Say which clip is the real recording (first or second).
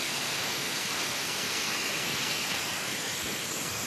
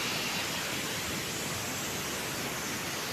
second